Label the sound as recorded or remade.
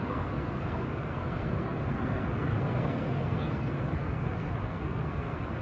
remade